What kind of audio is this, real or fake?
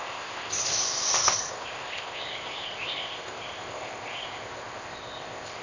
fake